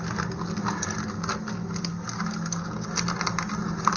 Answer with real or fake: real